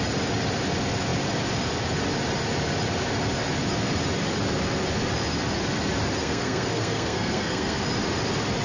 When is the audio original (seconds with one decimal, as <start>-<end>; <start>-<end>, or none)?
0.0-6.2; 7.8-8.6